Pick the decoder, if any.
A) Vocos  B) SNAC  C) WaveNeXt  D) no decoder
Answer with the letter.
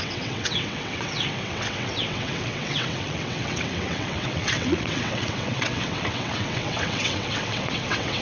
C